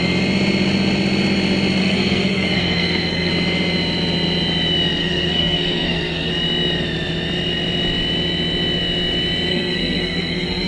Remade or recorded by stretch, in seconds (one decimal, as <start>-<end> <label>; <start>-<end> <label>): 0.0-1.8 recorded; 1.8-3.3 remade; 3.3-5.0 recorded; 5.0-6.3 remade; 6.3-9.5 recorded; 9.5-10.7 remade